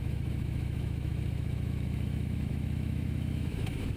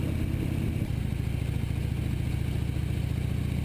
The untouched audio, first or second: second